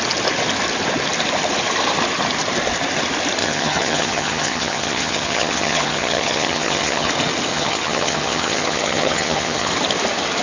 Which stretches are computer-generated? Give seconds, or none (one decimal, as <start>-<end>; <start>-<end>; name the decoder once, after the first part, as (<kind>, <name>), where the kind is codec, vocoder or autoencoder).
3.4-7.1 (vocoder, HiFi-GAN); 7.5-9.7